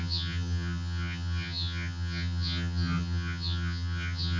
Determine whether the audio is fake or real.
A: fake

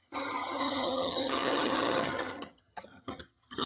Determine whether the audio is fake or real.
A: fake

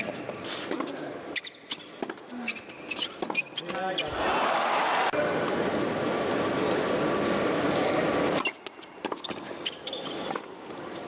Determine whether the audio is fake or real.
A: real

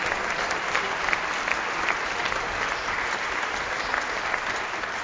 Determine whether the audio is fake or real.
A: real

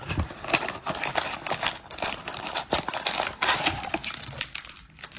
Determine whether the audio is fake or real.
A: real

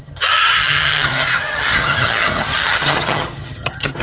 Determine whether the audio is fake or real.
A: fake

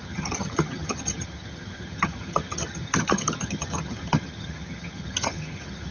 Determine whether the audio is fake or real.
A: fake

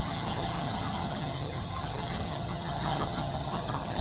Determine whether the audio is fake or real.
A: fake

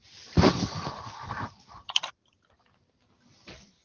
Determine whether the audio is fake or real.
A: real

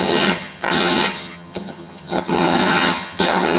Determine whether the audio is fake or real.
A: fake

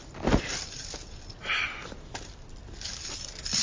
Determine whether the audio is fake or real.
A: real